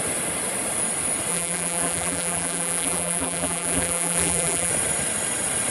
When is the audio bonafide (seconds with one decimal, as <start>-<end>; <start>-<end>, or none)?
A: 0.0-1.3; 4.7-5.7